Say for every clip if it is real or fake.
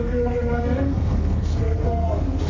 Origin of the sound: fake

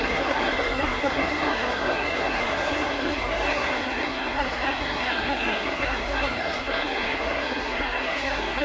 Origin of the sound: fake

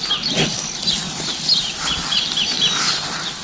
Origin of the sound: real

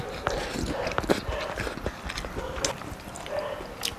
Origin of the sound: real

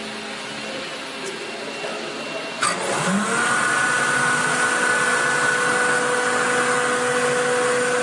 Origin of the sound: real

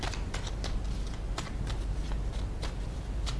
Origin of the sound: real